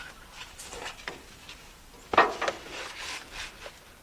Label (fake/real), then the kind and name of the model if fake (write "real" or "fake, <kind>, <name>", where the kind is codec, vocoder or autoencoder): real